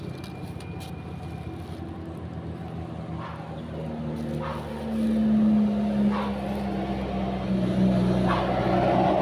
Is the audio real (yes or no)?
yes